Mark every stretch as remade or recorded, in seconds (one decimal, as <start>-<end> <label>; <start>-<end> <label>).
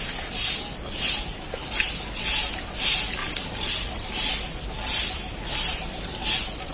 0.0-3.2 recorded; 3.2-3.9 remade; 3.9-6.7 recorded